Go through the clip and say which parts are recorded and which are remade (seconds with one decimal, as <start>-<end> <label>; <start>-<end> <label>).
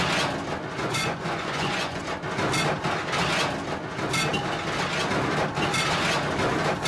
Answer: 0.0-0.8 recorded; 0.8-2.0 remade; 2.0-6.9 recorded